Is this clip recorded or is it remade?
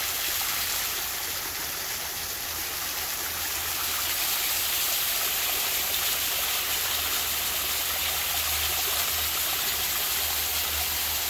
recorded